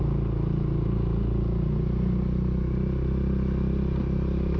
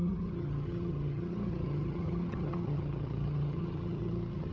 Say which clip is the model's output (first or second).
second